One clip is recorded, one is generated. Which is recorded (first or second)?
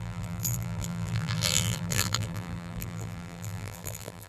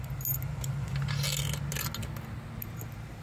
second